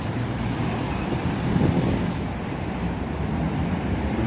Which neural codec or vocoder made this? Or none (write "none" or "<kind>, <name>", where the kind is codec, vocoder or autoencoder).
vocoder, BigVGAN v2